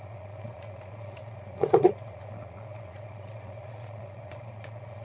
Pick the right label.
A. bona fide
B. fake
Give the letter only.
B